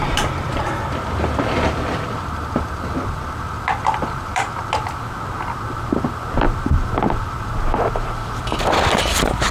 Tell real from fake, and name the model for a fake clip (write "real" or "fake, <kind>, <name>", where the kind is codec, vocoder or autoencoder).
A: fake, vocoder, BigVGAN v2